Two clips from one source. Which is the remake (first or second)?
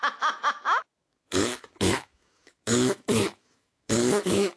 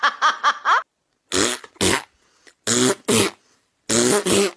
first